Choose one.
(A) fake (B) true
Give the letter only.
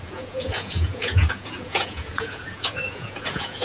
A